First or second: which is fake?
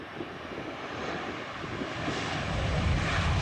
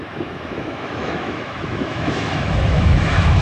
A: second